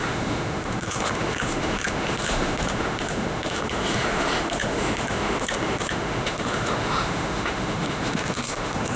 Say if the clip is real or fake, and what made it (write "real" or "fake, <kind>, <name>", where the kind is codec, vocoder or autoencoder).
fake, autoencoder, DAC-VAE